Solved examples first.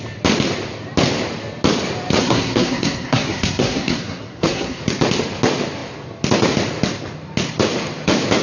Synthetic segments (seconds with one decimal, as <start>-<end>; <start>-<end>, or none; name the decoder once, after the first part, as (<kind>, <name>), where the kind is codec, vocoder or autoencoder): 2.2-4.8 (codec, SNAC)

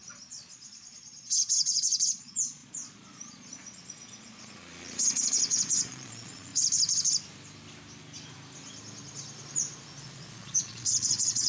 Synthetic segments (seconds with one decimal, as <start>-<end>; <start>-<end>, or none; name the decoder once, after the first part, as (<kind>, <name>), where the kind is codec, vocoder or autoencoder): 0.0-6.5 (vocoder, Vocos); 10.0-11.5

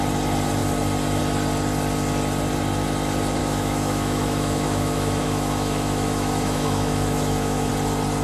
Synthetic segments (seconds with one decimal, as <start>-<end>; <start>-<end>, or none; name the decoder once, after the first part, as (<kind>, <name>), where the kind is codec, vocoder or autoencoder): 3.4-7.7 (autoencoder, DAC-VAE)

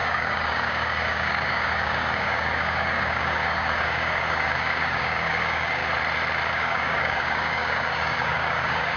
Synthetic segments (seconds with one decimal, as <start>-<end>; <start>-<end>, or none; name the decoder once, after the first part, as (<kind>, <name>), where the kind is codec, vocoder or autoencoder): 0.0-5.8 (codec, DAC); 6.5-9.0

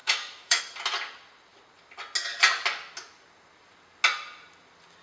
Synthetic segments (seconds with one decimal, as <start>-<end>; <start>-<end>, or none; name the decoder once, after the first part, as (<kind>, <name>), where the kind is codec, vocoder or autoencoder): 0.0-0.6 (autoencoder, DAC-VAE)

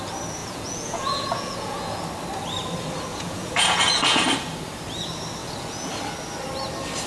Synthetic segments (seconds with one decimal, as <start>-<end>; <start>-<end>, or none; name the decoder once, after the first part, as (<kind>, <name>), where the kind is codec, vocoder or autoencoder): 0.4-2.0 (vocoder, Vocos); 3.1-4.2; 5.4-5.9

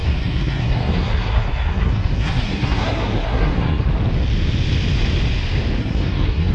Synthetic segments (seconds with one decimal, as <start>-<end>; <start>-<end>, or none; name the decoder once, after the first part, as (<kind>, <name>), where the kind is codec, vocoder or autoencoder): 0.0-3.9 (codec, SNAC); 5.8-6.5

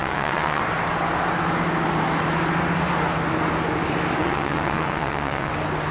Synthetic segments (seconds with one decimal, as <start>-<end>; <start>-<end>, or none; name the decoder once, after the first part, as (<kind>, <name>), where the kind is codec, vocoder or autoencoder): 0.0-0.6 (vocoder, WaveNeXt); 4.2-5.5